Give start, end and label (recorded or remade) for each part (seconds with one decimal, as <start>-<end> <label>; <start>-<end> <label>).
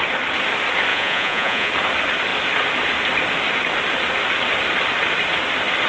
0.0-0.9 recorded; 0.9-1.7 remade; 1.7-5.9 recorded